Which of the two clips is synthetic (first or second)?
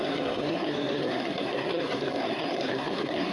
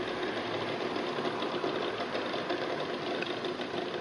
first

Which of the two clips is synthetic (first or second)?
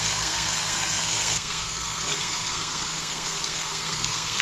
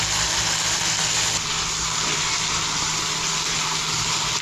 first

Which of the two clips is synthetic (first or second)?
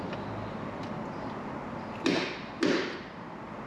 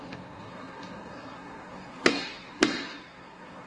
second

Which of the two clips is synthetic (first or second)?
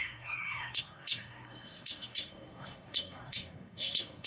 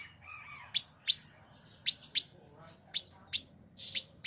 first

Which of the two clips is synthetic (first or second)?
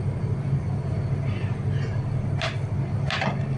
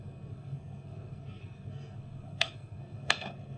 second